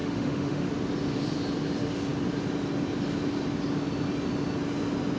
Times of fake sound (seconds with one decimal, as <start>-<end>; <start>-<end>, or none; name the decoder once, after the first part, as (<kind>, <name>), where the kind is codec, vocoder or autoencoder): 0.0-0.7 (autoencoder, DAC-VAE)